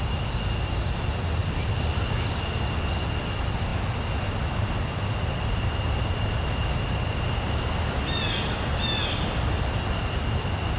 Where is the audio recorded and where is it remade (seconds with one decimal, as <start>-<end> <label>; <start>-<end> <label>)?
0.0-10.8 recorded